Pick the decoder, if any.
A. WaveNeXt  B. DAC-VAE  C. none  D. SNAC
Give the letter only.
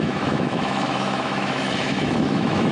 B